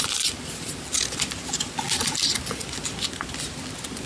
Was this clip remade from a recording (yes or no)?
no